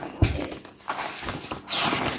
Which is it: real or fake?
real